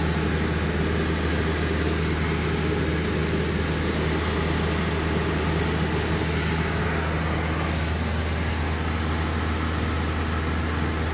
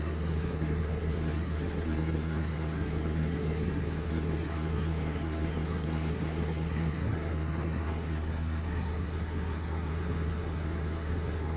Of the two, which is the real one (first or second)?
first